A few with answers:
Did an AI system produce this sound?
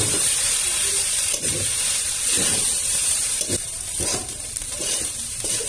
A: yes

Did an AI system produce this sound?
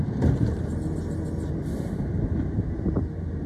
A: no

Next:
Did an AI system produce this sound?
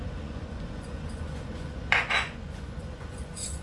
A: yes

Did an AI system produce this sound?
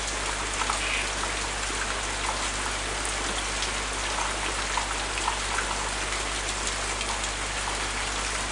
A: no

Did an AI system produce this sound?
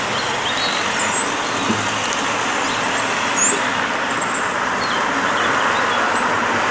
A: no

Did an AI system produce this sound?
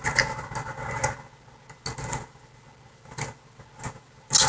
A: no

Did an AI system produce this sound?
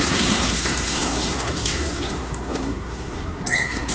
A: yes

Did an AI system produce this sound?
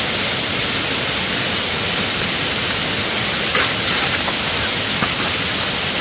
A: no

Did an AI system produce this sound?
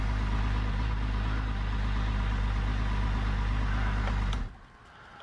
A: no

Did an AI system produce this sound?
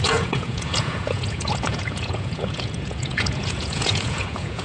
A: yes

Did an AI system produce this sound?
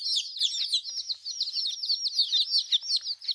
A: no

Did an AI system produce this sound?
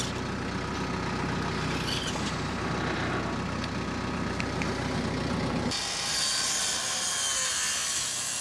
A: no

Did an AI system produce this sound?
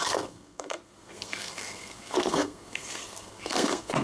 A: yes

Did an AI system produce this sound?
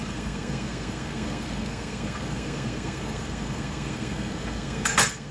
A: yes